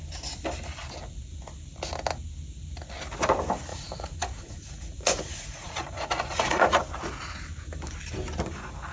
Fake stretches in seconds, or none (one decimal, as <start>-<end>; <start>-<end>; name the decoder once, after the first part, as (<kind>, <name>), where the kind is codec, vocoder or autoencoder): 3.7-6.8 (vocoder, Vocos)